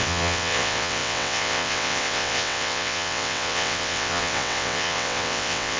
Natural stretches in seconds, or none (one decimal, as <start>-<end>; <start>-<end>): none